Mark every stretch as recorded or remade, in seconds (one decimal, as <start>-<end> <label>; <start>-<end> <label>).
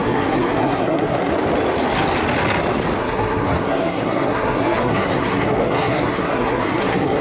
0.0-1.3 remade; 1.3-3.0 recorded; 3.0-7.2 remade